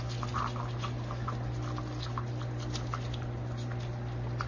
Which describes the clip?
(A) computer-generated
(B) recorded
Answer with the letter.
B